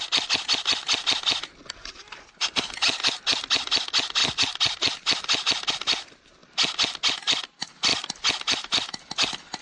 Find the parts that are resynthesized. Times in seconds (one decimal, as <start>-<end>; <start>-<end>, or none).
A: none